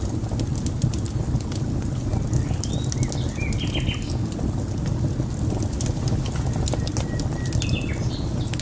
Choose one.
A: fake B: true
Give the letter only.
B